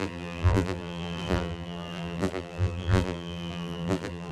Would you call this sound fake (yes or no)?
yes